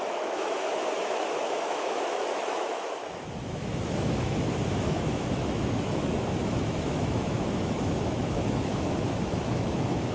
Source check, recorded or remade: remade